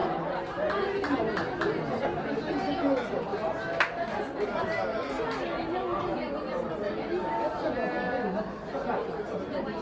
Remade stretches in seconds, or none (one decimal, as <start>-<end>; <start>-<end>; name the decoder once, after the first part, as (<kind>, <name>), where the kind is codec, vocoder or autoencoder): none